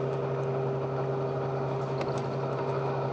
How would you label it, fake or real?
real